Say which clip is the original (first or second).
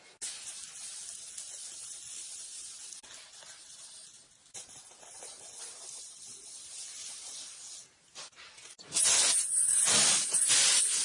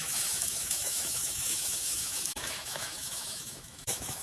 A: first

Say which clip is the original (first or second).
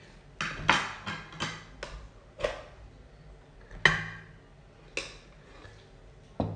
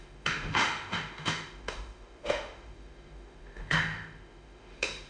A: first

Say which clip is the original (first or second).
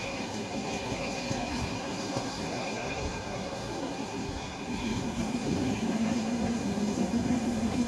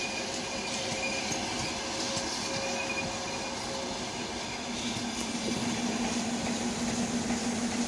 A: second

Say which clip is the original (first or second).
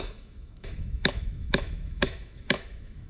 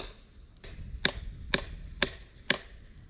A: second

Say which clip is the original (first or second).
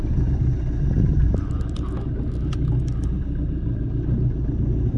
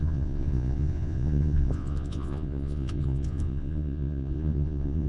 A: first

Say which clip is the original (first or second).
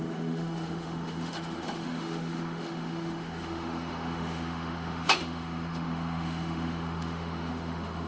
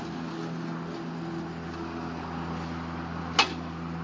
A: second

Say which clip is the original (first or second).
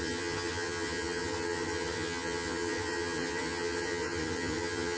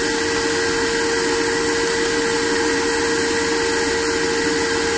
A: second